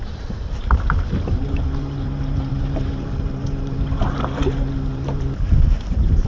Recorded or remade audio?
remade